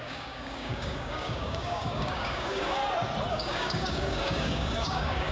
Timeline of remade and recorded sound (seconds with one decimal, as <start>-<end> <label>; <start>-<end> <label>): 0.0-2.8 remade; 2.8-3.3 recorded; 3.3-5.3 remade